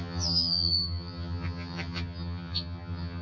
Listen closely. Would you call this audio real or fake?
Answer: fake